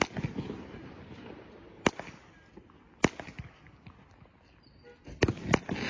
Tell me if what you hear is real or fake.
real